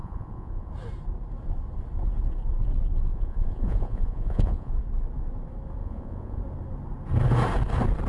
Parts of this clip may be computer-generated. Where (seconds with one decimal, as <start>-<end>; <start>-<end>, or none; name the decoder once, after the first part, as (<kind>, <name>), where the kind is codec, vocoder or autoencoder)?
0.0-0.7 (vocoder, Vocos); 3.1-4.7; 5.8-6.4